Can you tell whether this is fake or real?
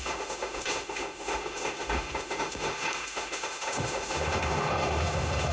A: fake